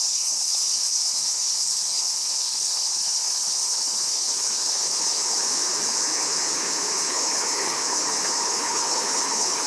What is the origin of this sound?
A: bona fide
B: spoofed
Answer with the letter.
B